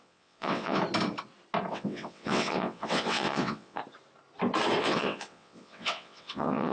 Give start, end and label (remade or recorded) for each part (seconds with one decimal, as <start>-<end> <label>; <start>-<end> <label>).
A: 0.0-0.8 remade; 0.8-1.7 recorded; 1.7-3.8 remade; 3.8-4.8 recorded; 4.8-6.7 remade